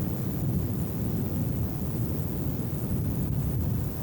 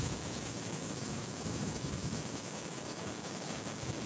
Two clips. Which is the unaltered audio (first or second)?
first